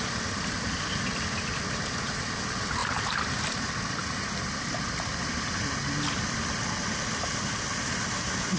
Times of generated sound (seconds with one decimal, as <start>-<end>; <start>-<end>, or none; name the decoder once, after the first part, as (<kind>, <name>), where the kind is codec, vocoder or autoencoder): none